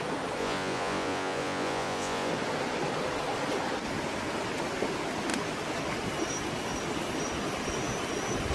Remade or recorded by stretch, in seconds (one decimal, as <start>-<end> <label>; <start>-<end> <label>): 0.0-0.4 recorded; 0.4-2.3 remade; 2.3-8.5 recorded